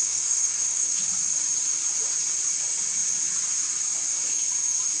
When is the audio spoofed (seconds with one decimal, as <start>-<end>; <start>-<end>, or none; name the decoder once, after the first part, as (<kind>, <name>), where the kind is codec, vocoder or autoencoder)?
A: 0.0-1.0 (codec, SNAC)